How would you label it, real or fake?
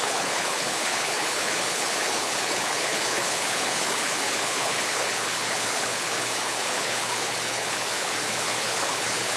fake